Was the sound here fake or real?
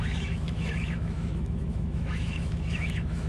fake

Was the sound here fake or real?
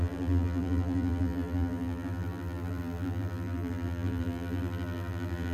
fake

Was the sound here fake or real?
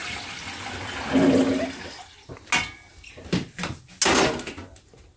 real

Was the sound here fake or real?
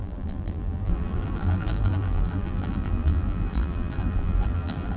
fake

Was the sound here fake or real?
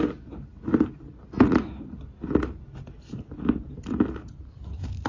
real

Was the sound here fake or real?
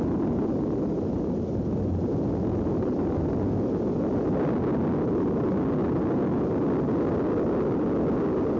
real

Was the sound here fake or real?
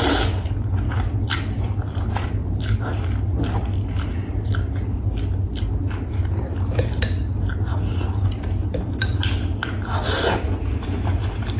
real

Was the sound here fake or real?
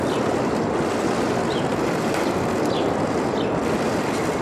real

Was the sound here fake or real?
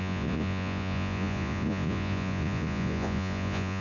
fake